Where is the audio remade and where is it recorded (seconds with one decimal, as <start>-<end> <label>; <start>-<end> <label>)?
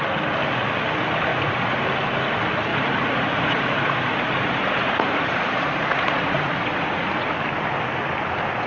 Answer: 0.0-1.3 recorded; 1.3-1.8 remade; 1.8-2.7 recorded; 2.7-7.1 remade; 7.1-8.7 recorded